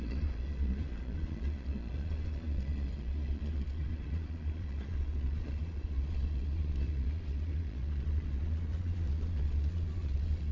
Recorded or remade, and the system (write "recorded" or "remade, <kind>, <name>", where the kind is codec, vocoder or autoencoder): remade, vocoder, Vocos